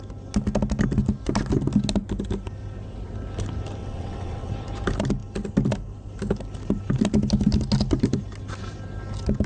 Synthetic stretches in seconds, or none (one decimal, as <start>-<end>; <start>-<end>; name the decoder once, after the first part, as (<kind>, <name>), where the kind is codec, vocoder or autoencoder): 3.8-4.5 (vocoder, WaveNeXt)